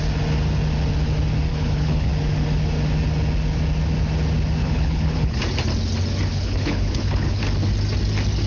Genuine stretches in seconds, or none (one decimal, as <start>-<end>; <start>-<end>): 0.0-1.5; 2.1-4.6; 5.4-6.3; 7.4-8.5